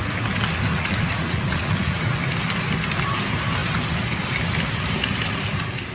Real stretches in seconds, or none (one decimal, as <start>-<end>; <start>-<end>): 0.0-0.7; 2.2-5.9